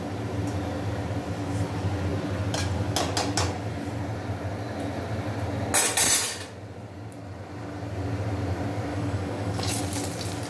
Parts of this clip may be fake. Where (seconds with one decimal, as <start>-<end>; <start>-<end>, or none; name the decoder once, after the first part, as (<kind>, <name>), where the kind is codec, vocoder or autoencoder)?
8.9-9.8 (codec, DAC)